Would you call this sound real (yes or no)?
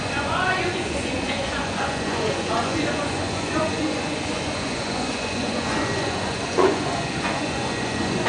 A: no